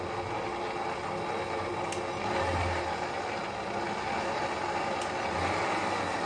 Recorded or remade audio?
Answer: recorded